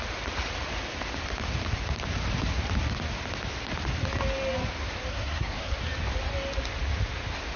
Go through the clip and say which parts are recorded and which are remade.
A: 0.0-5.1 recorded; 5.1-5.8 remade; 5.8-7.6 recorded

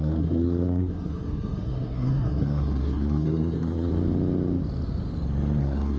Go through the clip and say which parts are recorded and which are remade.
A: 0.0-3.9 remade; 3.9-5.6 recorded; 5.6-6.0 remade

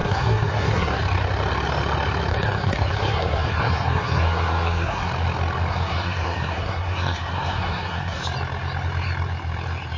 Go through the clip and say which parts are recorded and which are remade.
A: 0.0-1.0 remade; 1.0-2.3 recorded; 2.3-5.1 remade; 5.1-5.7 recorded; 5.7-8.2 remade; 8.2-10.0 recorded

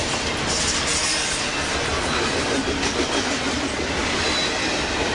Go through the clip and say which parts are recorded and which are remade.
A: 0.0-5.1 recorded

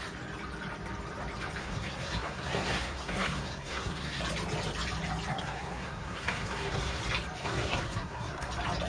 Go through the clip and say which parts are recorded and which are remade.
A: 0.0-1.6 recorded; 1.6-4.2 remade; 4.2-5.3 recorded; 5.3-7.0 remade; 7.0-7.4 recorded; 7.4-8.5 remade; 8.5-8.9 recorded

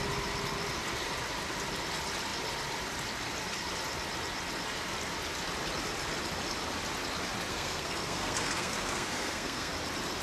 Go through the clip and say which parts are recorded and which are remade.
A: 0.0-7.5 recorded; 7.5-9.7 remade; 9.7-10.2 recorded

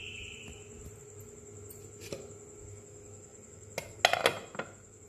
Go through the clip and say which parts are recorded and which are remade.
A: 0.0-5.1 recorded

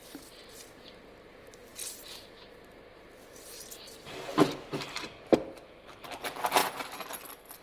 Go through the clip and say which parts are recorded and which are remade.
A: 0.0-7.6 recorded